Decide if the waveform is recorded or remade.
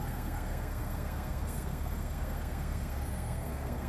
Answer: remade